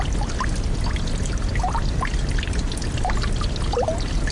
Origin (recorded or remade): recorded